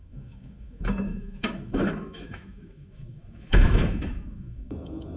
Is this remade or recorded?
remade